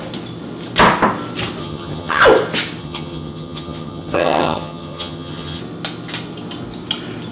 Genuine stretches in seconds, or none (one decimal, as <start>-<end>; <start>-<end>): 0.0-1.6; 2.2-2.8; 5.6-7.3